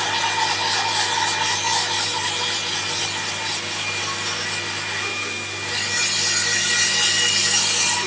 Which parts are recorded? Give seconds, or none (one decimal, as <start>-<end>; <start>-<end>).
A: 0.0-8.1